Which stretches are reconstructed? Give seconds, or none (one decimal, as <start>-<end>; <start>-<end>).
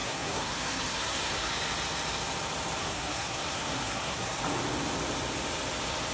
0.0-1.5; 2.8-4.4